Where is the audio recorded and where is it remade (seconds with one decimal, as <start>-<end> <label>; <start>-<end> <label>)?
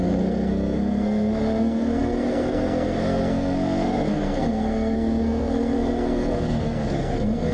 0.0-7.5 remade